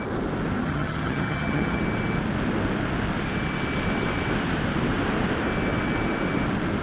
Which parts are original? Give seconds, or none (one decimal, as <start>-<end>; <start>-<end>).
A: 0.0-0.6; 1.8-6.8